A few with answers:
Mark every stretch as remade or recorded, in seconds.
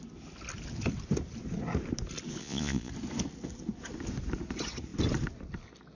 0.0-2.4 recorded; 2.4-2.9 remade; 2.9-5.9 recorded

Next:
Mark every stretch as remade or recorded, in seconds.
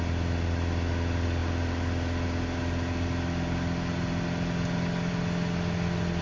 0.0-6.2 recorded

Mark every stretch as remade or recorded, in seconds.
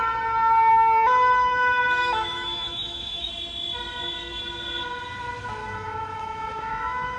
0.0-0.7 recorded; 0.7-3.3 remade; 3.3-5.6 recorded; 5.6-7.2 remade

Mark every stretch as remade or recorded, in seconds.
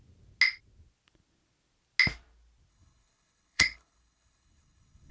0.0-2.7 recorded; 2.7-5.1 remade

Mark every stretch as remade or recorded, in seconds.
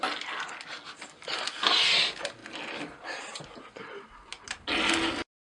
0.0-5.5 recorded